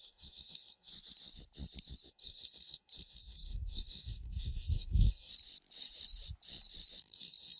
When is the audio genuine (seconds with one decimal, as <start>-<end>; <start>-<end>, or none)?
0.9-2.1; 5.3-7.0